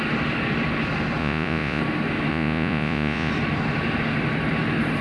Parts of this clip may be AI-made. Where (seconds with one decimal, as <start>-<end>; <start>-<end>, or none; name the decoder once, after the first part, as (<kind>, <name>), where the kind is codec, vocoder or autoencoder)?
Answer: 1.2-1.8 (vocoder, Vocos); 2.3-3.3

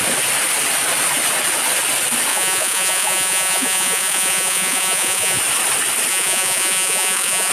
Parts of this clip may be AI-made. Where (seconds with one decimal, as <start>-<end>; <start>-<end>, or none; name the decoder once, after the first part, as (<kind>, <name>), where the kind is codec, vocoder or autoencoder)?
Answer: 2.3-5.4 (vocoder, Vocos); 6.1-7.5

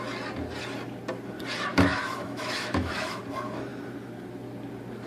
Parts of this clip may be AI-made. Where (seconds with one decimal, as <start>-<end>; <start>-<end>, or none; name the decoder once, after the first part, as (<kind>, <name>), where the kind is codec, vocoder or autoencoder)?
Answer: 1.7-3.2 (autoencoder, DAC-VAE)